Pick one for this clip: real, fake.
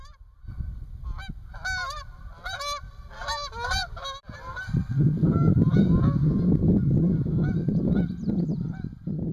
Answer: real